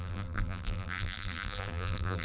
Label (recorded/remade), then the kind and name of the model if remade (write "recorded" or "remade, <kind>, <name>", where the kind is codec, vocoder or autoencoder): remade, vocoder, BigVGAN v2